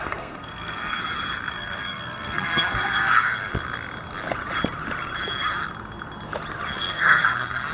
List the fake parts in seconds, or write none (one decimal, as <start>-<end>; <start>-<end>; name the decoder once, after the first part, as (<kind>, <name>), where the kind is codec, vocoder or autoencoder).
0.0-1.0 (codec, SNAC); 1.5-3.5; 6.8-7.7